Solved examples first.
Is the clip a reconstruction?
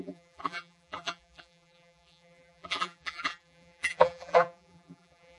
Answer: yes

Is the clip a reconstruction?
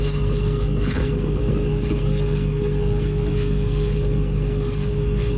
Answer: yes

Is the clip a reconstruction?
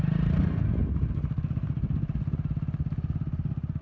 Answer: no